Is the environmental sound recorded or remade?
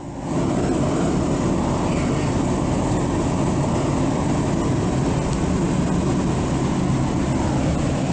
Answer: recorded